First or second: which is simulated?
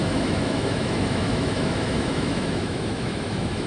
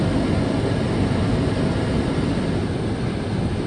first